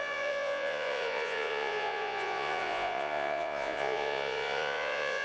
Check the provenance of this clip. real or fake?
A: fake